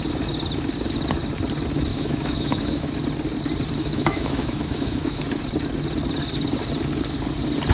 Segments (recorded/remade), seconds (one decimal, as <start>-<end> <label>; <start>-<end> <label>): 0.0-1.9 recorded; 1.9-2.9 remade; 2.9-3.8 recorded; 3.8-5.2 remade; 5.2-7.7 recorded